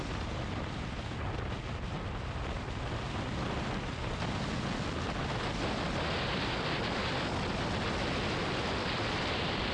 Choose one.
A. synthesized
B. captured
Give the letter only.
B